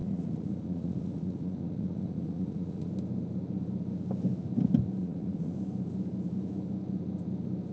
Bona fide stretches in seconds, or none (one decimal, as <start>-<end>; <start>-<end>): 2.9-5.0; 5.5-7.7